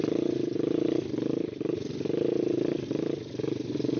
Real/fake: real